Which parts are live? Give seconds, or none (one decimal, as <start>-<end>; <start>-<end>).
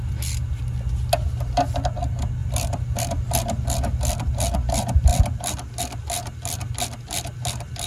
0.0-2.4; 3.1-7.9